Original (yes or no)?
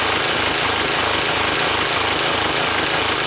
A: yes